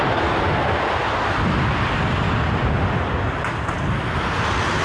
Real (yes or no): yes